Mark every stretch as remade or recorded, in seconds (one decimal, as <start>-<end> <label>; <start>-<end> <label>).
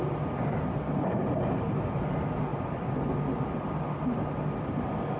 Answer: 0.0-5.2 recorded